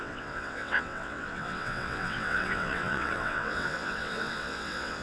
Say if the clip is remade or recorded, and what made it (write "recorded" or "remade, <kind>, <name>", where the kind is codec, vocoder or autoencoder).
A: remade, vocoder, WaveNeXt